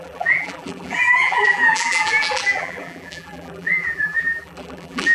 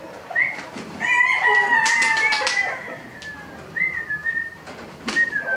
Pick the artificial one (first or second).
first